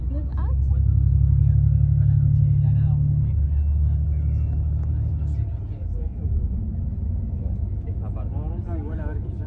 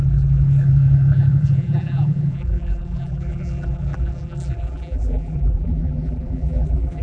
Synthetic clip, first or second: second